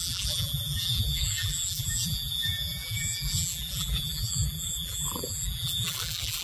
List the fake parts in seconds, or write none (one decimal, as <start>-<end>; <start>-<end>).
0.0-6.4